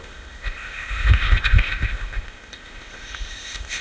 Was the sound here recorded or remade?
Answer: remade